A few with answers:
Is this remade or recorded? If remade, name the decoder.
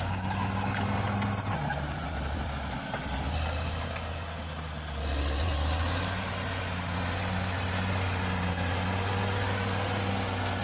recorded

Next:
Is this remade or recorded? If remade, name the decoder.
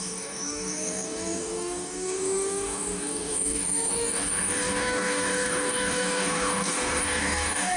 remade, codec, DAC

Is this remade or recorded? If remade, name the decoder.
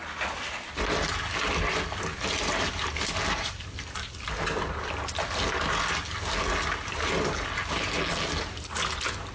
recorded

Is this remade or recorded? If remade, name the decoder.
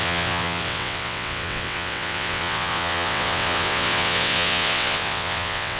remade, vocoder, WaveNeXt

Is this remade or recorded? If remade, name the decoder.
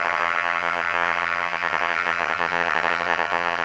remade, vocoder, HiFi-GAN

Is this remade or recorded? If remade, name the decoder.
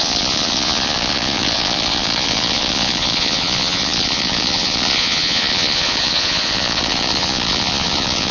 remade, vocoder, Vocos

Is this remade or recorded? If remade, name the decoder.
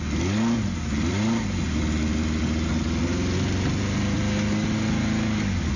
recorded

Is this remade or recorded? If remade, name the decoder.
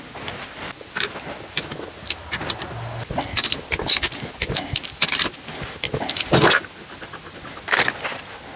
recorded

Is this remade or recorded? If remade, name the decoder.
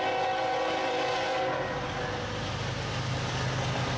recorded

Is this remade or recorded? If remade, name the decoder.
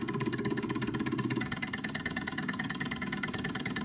remade, codec, DAC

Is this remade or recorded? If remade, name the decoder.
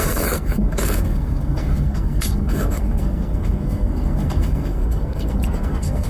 remade, codec, SNAC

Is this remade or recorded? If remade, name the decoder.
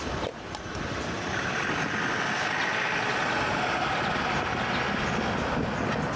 recorded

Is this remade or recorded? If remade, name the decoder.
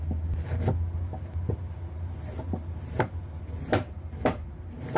recorded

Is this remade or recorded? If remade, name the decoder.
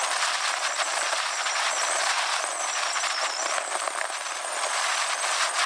recorded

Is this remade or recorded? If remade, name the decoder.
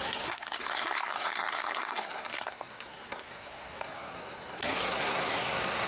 remade, codec, SNAC